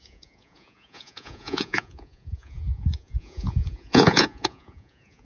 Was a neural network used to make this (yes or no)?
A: yes